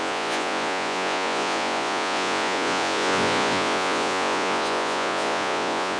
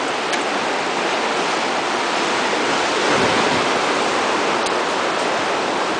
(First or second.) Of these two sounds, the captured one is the second